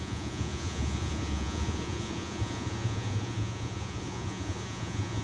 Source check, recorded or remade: remade